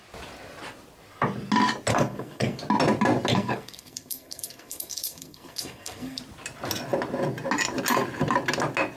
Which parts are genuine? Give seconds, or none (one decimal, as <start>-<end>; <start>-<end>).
0.0-1.9; 2.6-3.3; 6.2-9.0